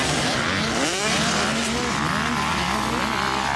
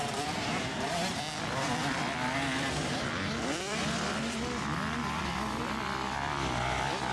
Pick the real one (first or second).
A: first